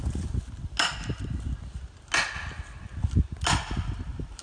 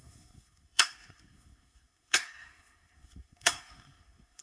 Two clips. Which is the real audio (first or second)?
first